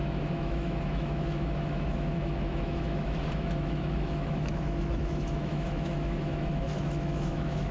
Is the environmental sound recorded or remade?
remade